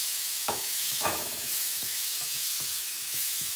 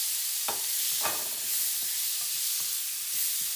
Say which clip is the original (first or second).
second